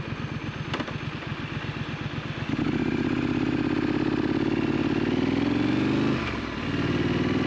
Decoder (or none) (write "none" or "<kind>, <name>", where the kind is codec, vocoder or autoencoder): none